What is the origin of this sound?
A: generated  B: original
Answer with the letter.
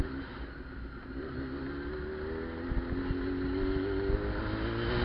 B